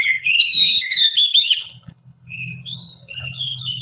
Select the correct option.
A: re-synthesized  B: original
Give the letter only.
A